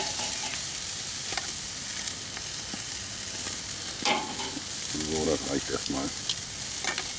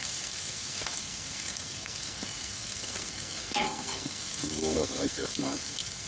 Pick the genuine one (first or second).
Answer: first